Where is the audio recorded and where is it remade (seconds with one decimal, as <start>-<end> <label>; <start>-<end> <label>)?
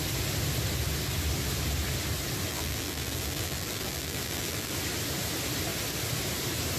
0.0-2.5 recorded; 2.5-4.7 remade; 4.7-6.8 recorded